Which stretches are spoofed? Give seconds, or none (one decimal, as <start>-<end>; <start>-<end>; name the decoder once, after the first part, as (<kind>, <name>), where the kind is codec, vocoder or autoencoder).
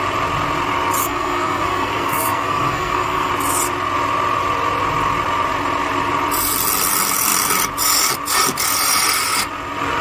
1.0-3.3 (codec, SNAC)